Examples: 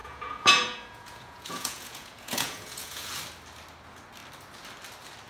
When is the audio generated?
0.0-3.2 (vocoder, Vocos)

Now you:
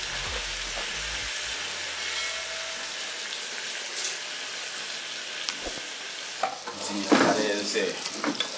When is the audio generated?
none

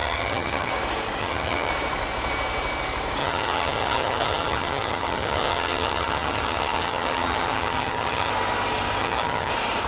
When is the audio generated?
0.0-0.7 (vocoder, HiFi-GAN); 1.2-1.7; 3.2-8.3; 9.0-9.5